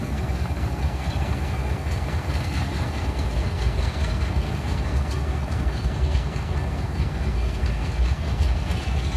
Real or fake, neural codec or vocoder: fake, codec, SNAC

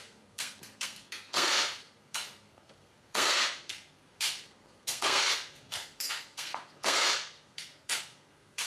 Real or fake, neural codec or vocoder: fake, codec, SNAC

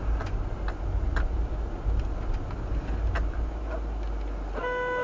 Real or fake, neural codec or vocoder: real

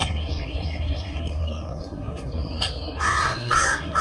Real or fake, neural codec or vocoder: fake, codec, SNAC